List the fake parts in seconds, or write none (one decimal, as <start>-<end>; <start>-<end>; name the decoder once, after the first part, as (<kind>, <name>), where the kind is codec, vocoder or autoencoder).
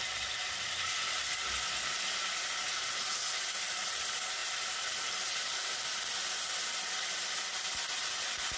none